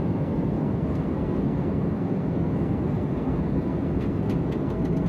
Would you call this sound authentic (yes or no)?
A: no